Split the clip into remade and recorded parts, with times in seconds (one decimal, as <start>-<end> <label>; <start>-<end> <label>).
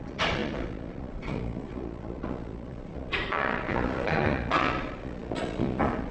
0.0-6.1 remade